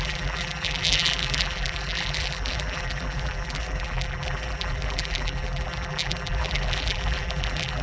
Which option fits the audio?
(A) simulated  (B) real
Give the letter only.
A